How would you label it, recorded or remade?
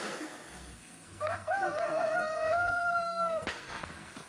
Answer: remade